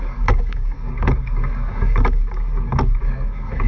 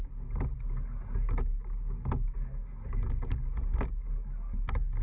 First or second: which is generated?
first